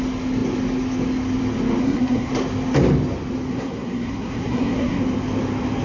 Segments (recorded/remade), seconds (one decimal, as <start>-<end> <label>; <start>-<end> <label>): 0.0-1.8 recorded; 1.8-2.3 remade; 2.3-3.5 recorded; 3.5-5.0 remade; 5.0-5.8 recorded